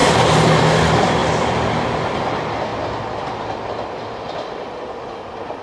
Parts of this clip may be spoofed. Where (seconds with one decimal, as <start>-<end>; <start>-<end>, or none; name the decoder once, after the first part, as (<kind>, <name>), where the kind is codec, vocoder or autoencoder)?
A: none